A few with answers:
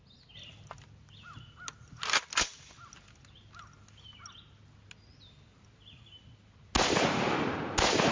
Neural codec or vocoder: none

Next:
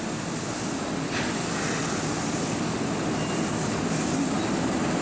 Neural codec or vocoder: none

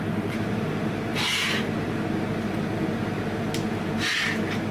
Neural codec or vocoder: none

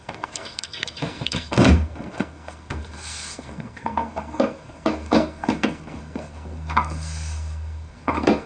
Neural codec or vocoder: codec, SNAC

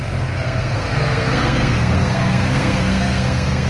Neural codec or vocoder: codec, SNAC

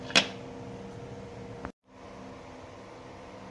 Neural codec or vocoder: none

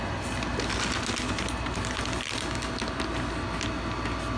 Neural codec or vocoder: none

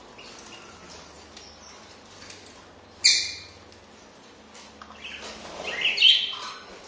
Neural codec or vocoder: none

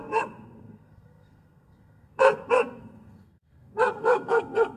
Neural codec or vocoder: codec, SNAC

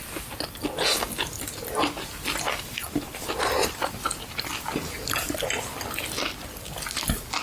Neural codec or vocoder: none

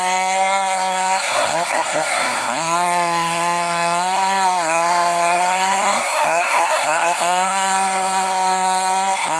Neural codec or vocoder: codec, SNAC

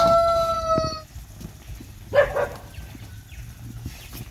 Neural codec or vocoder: none